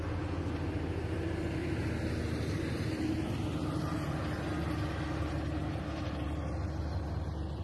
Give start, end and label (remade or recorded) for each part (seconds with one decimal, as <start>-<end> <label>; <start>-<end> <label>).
0.0-7.6 recorded

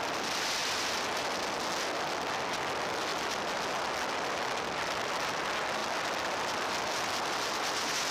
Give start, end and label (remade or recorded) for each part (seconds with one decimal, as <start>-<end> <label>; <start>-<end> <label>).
0.0-8.1 recorded

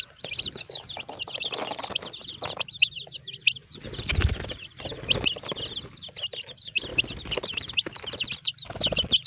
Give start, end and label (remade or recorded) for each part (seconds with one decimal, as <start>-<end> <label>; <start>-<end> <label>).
0.0-9.3 recorded

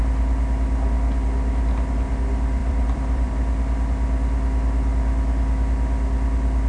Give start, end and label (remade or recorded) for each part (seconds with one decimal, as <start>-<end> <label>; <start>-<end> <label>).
0.0-2.6 recorded; 2.6-3.3 remade; 3.3-6.7 recorded

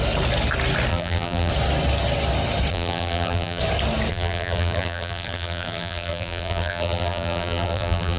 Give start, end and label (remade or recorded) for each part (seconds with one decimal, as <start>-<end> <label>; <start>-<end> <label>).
0.0-0.9 recorded; 0.9-1.5 remade; 1.5-2.7 recorded; 2.7-3.6 remade; 3.6-4.1 recorded; 4.1-8.2 remade